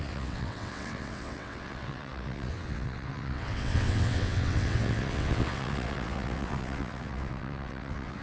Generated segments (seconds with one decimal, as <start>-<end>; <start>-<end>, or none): 0.0-8.2